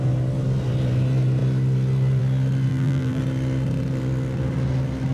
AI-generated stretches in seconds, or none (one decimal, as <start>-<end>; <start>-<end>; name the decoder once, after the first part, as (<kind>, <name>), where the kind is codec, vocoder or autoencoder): 2.7-3.2 (vocoder, BigVGAN v2)